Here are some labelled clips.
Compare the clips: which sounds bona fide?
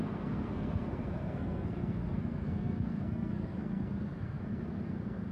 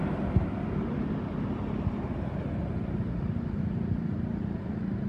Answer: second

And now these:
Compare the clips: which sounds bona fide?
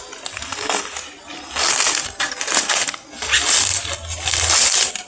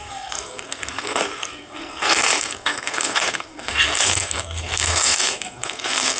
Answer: first